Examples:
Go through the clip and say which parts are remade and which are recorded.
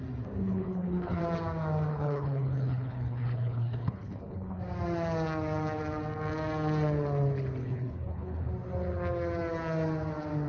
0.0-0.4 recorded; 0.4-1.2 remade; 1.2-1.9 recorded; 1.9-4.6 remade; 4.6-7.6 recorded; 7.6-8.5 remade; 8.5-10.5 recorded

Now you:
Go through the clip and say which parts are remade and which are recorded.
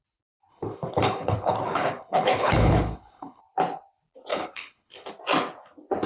0.0-0.5 recorded; 0.5-3.4 remade; 3.4-4.3 recorded; 4.3-5.1 remade; 5.1-6.1 recorded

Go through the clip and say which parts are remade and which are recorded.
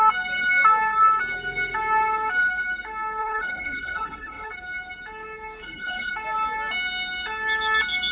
0.0-3.2 recorded; 3.2-4.5 remade; 4.5-5.6 recorded; 5.6-6.1 remade; 6.1-8.1 recorded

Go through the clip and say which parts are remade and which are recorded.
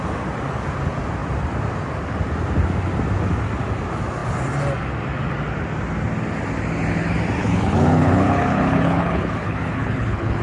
0.0-7.4 recorded; 7.4-10.4 remade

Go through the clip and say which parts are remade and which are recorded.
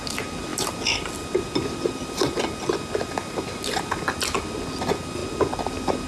0.0-6.1 recorded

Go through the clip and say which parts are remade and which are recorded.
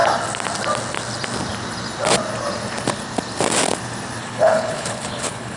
0.0-4.2 recorded; 4.2-5.6 remade